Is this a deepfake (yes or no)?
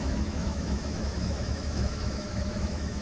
yes